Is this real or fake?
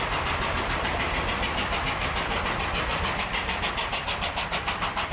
real